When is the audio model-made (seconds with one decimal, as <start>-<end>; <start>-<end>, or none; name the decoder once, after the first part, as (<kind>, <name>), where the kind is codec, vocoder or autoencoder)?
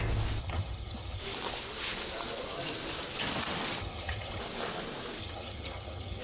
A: 0.4-1.2 (vocoder, HiFi-GAN); 3.8-4.4; 5.2-6.2